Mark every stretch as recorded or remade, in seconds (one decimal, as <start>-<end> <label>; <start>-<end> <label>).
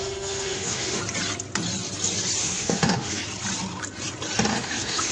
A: 0.0-1.0 remade; 1.0-2.4 recorded; 2.4-3.2 remade; 3.2-4.5 recorded; 4.5-5.1 remade